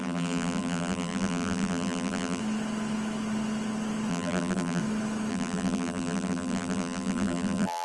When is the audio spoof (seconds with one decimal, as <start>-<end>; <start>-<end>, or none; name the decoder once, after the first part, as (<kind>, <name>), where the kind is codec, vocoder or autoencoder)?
0.0-2.4 (vocoder, BigVGAN v2); 4.1-4.8; 5.3-7.8

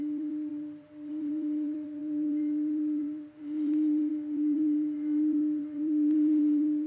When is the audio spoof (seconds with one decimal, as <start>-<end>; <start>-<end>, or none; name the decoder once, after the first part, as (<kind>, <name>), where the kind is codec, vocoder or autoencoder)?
0.0-6.9 (vocoder, BigVGAN v2)

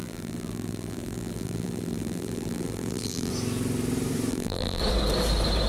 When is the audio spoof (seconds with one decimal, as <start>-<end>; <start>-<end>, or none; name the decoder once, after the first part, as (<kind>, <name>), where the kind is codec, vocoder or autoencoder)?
0.0-3.3 (vocoder, BigVGAN v2); 4.3-4.8

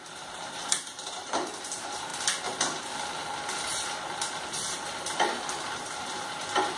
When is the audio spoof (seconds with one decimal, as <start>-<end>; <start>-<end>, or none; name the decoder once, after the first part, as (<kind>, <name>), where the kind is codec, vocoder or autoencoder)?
0.0-2.1 (vocoder, BigVGAN v2); 6.0-6.8

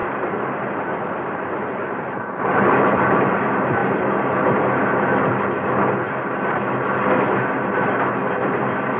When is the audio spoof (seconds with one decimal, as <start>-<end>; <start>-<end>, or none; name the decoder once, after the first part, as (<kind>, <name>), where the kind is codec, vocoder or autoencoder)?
0.0-3.8 (vocoder, BigVGAN v2)

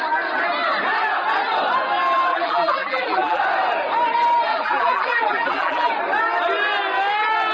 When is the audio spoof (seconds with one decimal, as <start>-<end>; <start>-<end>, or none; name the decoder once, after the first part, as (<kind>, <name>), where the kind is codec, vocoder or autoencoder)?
2.3-3.4 (vocoder, BigVGAN v2); 4.5-5.9

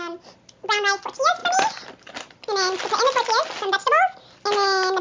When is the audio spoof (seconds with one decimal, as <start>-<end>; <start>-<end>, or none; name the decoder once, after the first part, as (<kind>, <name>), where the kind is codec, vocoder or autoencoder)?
none

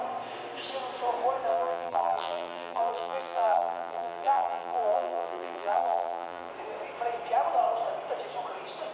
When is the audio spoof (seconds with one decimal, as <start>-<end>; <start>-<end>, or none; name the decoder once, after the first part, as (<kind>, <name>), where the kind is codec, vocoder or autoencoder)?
1.5-6.5 (vocoder, BigVGAN v2)